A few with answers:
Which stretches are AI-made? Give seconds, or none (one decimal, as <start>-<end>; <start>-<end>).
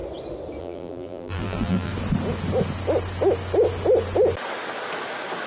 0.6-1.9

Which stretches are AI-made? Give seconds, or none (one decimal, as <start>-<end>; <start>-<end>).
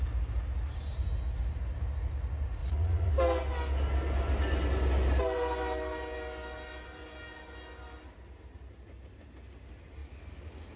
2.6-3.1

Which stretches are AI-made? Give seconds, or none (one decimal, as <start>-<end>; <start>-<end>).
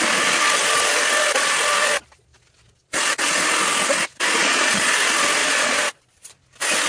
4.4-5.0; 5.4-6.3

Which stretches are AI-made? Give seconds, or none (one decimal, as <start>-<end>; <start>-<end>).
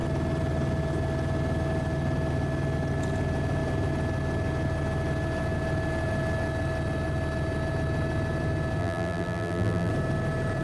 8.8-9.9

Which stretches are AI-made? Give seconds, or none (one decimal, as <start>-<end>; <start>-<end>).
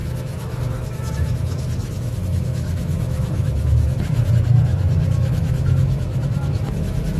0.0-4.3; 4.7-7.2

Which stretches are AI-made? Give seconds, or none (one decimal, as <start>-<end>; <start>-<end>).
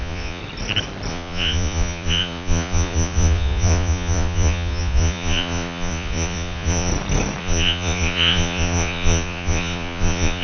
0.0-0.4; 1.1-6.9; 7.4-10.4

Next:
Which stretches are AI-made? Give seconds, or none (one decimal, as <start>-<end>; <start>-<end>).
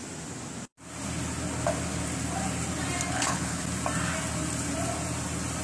3.1-3.6